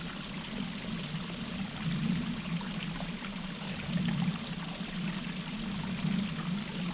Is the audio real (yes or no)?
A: yes